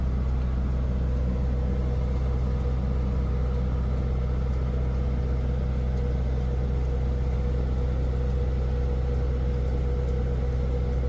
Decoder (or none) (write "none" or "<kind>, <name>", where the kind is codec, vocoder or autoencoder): none